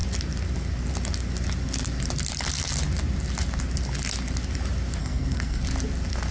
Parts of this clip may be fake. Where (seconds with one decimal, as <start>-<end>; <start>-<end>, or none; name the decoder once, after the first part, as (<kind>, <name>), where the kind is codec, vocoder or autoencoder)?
5.0-5.6 (codec, SNAC)